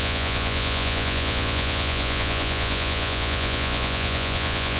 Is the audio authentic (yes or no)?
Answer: no